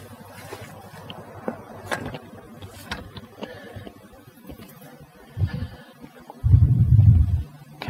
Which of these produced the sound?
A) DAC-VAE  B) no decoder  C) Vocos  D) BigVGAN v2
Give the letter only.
B